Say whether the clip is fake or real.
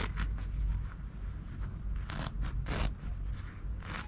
real